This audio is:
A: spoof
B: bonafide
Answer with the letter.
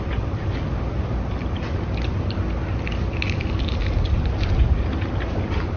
B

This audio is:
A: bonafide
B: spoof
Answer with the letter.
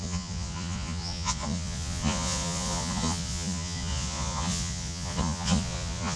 B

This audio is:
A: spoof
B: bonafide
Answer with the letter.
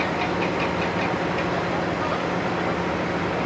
B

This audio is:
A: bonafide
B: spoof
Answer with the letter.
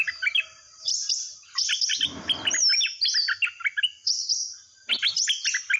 A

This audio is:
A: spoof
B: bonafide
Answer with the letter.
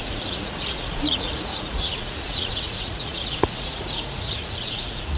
A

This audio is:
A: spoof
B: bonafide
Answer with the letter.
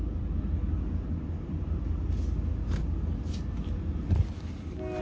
B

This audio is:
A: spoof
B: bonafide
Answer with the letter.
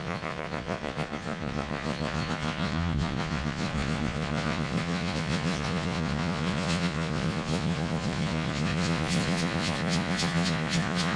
A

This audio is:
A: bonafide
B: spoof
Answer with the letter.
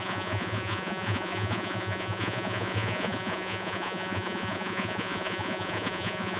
B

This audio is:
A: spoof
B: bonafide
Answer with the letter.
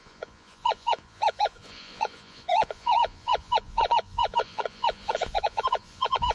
A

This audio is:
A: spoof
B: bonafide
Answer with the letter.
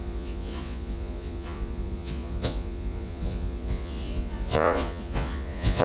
A